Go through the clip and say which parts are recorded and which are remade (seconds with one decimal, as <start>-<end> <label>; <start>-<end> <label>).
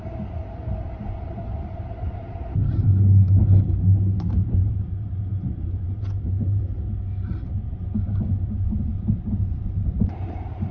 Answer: 0.0-4.4 recorded; 4.4-6.6 remade; 6.6-8.9 recorded; 8.9-10.7 remade